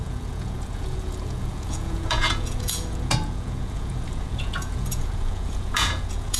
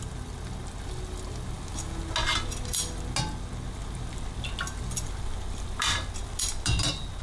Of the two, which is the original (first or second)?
second